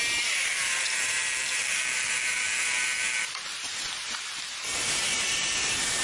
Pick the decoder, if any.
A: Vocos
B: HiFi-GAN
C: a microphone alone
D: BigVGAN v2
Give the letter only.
D